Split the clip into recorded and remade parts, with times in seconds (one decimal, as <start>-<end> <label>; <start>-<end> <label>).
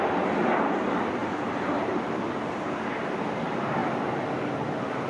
0.0-1.2 recorded; 1.2-2.1 remade; 2.1-5.1 recorded